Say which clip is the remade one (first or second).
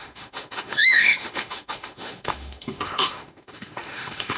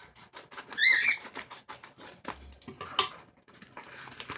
first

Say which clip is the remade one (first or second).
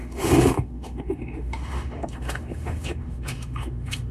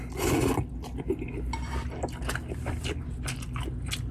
first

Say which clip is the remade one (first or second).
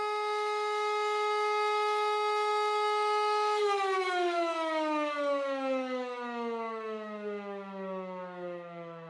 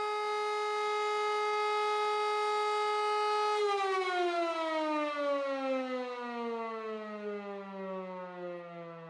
first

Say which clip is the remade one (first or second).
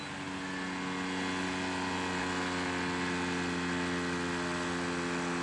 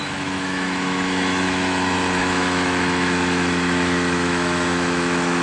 second